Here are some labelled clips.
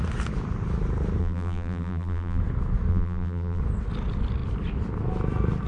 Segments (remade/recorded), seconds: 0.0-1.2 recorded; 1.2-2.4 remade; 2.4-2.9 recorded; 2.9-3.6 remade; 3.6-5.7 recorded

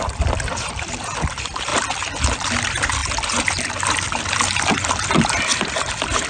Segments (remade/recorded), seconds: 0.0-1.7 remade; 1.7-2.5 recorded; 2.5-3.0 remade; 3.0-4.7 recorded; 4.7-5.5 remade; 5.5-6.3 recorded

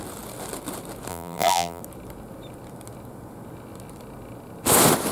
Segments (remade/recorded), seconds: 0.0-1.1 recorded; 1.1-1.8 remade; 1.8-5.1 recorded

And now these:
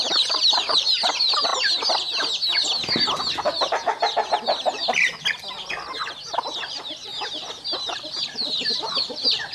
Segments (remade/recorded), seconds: 0.0-1.5 remade; 1.5-5.7 recorded; 5.7-7.1 remade; 7.1-7.9 recorded; 7.9-9.5 remade

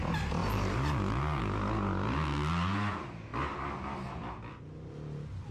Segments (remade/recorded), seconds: 0.0-0.4 recorded; 0.4-1.4 remade; 1.4-5.5 recorded

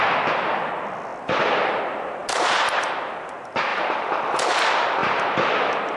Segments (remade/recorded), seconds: 0.0-1.1 recorded; 1.1-1.8 remade; 1.8-2.2 recorded; 2.2-3.1 remade; 3.1-3.7 recorded; 3.7-4.4 remade; 4.4-6.0 recorded

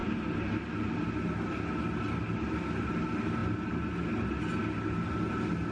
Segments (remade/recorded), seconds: 0.0-5.7 recorded